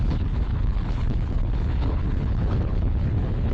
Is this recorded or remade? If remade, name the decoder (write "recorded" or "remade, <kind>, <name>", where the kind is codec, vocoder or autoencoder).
remade, codec, HILCodec